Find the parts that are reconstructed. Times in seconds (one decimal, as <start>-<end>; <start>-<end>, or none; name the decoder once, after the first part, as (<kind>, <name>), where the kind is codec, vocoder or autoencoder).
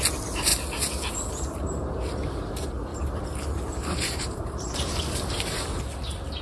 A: 2.9-5.8 (vocoder, BigVGAN v2)